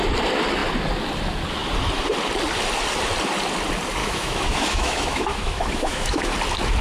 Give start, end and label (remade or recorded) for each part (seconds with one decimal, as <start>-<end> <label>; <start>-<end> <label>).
0.0-4.0 recorded; 4.0-6.3 remade; 6.3-6.8 recorded